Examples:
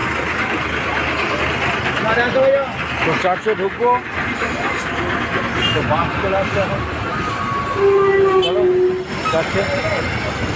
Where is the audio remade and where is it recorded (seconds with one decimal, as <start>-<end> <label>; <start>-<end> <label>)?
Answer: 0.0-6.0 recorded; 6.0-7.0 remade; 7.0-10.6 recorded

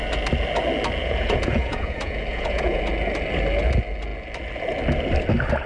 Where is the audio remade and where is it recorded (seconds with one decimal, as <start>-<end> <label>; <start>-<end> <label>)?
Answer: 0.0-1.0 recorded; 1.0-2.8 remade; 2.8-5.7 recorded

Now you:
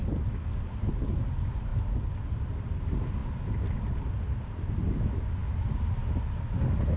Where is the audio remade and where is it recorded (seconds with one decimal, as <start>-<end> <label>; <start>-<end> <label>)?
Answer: 0.0-7.0 recorded

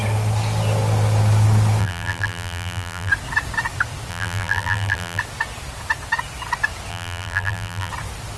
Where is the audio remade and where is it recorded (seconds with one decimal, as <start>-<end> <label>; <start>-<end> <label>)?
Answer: 0.0-1.8 recorded; 1.8-3.1 remade; 3.1-4.1 recorded; 4.1-5.2 remade; 5.2-6.9 recorded; 6.9-7.9 remade; 7.9-8.4 recorded

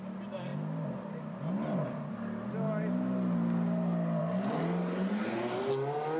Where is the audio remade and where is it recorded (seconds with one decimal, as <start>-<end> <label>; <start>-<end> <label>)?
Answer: 0.0-6.2 recorded